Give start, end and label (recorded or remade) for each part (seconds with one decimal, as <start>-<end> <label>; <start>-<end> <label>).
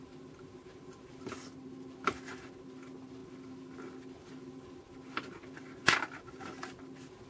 0.0-7.3 recorded